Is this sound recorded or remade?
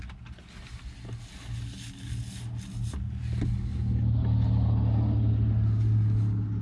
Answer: recorded